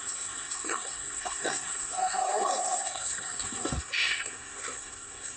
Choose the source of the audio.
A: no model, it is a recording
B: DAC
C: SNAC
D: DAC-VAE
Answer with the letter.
C